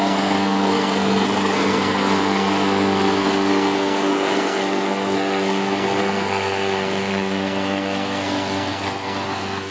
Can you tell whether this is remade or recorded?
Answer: remade